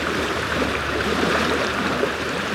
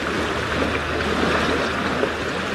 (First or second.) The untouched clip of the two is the second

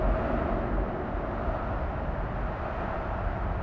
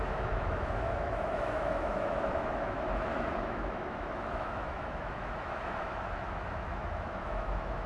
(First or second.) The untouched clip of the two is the first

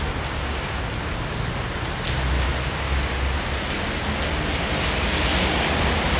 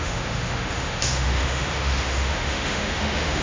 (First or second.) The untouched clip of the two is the first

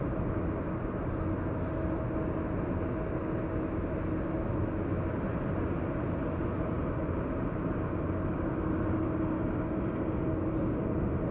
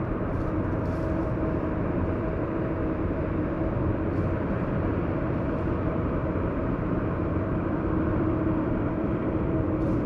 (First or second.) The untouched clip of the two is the first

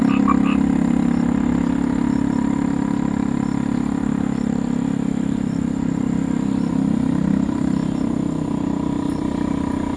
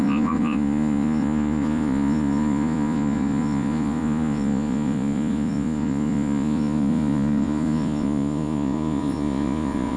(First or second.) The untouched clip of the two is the first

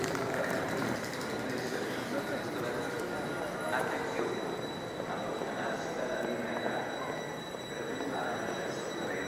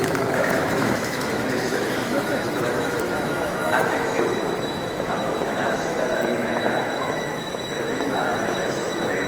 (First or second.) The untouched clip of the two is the first